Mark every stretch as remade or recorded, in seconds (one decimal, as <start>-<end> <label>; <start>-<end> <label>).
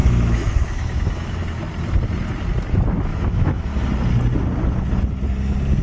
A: 0.0-1.7 remade; 1.7-3.1 recorded; 3.1-3.7 remade; 3.7-5.8 recorded